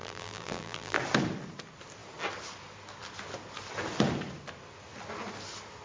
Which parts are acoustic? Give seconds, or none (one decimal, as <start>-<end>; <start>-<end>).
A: 1.0-5.8

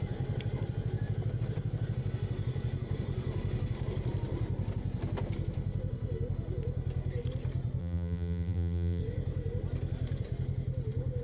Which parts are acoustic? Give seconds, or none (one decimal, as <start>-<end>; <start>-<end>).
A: 0.0-7.8; 9.0-11.2

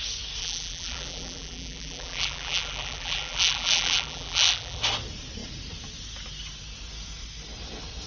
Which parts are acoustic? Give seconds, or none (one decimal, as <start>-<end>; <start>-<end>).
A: 0.0-0.4; 4.8-8.1

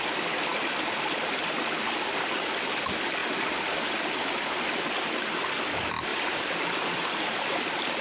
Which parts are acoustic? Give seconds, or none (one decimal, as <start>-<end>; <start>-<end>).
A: 0.0-6.1; 7.6-8.0

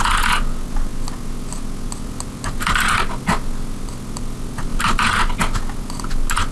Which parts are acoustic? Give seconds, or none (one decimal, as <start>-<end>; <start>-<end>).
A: 0.0-6.5